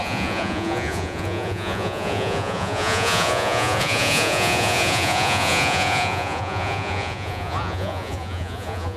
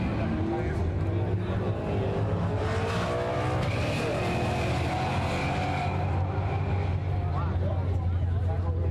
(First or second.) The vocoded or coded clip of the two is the first